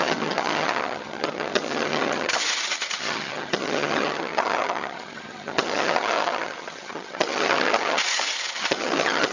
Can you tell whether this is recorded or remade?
remade